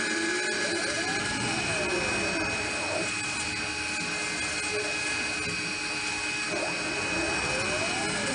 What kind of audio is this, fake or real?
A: real